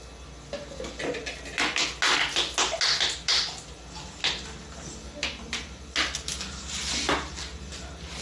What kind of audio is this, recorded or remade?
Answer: recorded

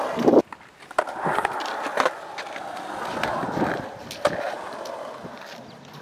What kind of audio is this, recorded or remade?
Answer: recorded